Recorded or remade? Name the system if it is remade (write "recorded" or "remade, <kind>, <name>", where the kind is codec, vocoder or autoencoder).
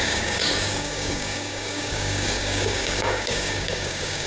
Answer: remade, codec, DAC